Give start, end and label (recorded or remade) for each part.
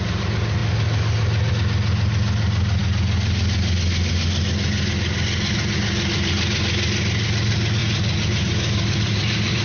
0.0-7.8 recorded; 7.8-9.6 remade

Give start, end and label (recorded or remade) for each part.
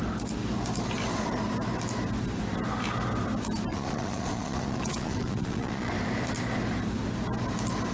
0.0-3.7 recorded; 3.7-5.9 remade; 5.9-7.9 recorded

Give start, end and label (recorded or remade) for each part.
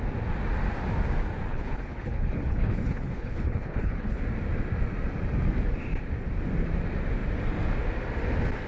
0.0-1.5 recorded; 1.5-4.2 remade; 4.2-8.7 recorded